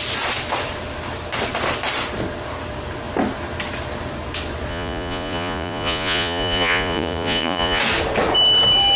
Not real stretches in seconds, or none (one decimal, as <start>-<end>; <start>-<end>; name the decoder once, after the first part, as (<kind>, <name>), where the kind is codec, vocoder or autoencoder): 4.7-7.8 (vocoder, Vocos)